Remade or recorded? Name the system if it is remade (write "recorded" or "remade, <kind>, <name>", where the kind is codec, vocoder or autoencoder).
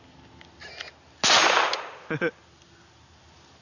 recorded